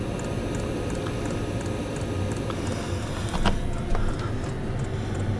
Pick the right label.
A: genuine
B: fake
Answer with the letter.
A